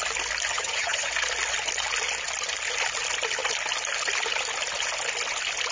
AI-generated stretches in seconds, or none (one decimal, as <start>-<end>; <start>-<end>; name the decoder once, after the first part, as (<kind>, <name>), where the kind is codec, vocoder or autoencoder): 0.5-1.1 (vocoder, HiFi-GAN)